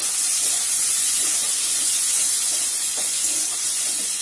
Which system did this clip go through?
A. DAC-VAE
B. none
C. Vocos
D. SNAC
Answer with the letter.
C